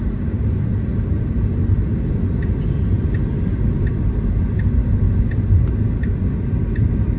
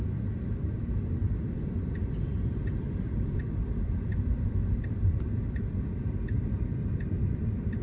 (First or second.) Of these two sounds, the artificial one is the second